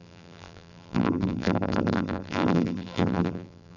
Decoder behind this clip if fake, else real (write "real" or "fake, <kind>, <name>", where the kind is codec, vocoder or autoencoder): fake, vocoder, BigVGAN v2